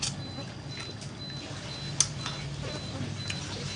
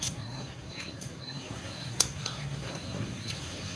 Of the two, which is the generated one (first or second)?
second